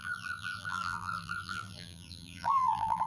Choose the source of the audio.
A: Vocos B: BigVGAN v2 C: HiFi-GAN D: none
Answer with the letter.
B